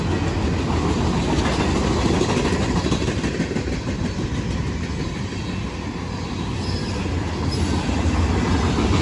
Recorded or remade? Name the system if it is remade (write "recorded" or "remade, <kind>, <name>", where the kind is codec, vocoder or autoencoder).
recorded